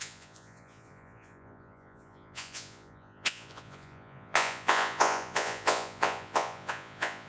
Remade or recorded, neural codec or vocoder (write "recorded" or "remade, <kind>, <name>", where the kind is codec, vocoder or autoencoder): remade, vocoder, Vocos